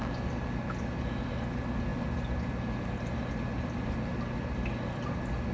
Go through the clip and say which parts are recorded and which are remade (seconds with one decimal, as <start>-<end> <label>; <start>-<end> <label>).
0.0-5.5 recorded